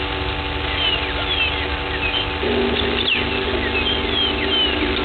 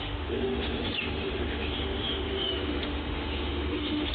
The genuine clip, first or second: first